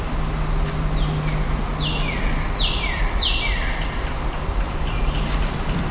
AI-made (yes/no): no